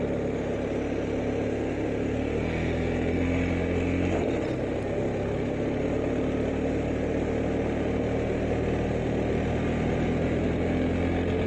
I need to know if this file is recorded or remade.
recorded